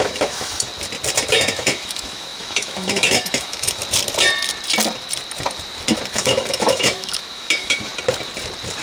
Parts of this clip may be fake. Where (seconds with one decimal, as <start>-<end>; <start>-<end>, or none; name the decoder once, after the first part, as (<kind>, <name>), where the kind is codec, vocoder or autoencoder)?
0.0-0.7 (autoencoder, DAC-VAE); 1.3-3.8; 6.1-7.9